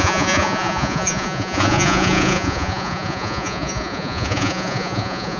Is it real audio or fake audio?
fake